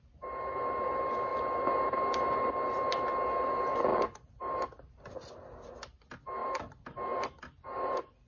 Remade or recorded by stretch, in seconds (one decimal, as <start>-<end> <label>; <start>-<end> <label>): 0.0-3.9 recorded; 3.9-4.6 remade; 4.6-6.4 recorded; 6.4-8.3 remade